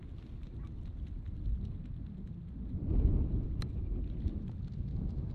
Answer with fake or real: real